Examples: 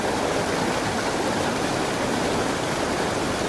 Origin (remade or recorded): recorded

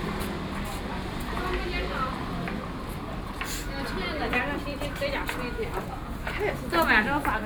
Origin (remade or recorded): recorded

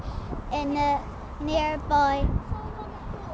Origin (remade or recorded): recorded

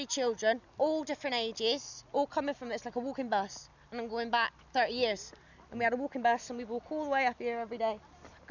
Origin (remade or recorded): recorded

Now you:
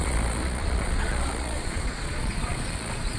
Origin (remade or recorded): remade